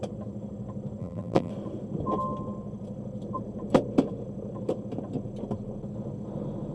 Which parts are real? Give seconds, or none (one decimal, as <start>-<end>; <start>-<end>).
0.0-1.0; 1.5-6.7